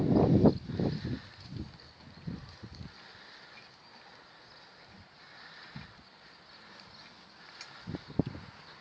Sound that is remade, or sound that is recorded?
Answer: recorded